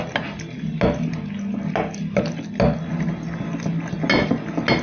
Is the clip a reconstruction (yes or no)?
no